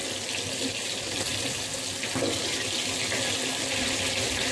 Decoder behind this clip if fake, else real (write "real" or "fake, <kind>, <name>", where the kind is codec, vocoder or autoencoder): real